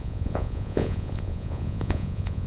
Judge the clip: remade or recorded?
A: remade